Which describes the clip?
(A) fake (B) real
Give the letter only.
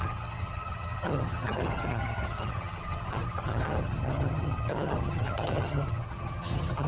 A